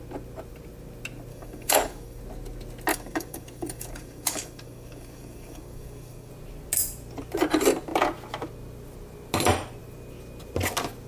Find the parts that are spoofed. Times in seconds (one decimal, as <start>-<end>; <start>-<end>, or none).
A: 1.3-2.2; 2.9-6.3